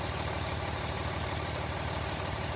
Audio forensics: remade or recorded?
remade